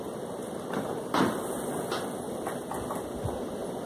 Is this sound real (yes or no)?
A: yes